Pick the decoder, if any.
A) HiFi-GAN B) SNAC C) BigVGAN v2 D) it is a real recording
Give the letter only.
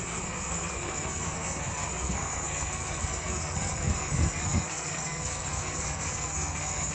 B